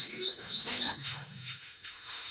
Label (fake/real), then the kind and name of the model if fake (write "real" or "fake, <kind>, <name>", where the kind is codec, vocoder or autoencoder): fake, autoencoder, DAC-VAE